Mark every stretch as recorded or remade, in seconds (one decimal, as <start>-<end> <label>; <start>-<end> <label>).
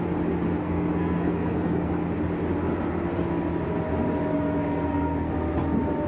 0.0-0.6 recorded; 0.6-1.9 remade; 1.9-4.3 recorded; 4.3-5.3 remade; 5.3-6.1 recorded